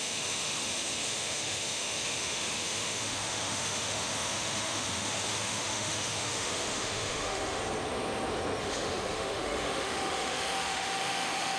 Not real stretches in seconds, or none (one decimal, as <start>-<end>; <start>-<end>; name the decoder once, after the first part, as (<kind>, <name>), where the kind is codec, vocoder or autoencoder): 0.0-7.6 (autoencoder, DAC-VAE); 8.6-11.6